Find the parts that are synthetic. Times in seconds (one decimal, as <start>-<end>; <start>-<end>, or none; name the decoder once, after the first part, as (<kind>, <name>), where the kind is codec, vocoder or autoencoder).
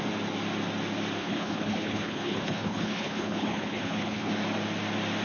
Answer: 1.2-4.3 (codec, HILCodec)